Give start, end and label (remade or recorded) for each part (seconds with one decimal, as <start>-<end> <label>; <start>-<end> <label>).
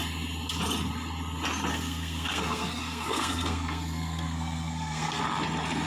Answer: 0.0-1.7 recorded; 1.7-5.2 remade; 5.2-5.9 recorded